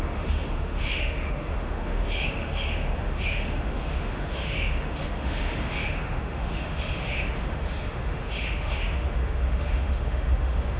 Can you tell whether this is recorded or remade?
remade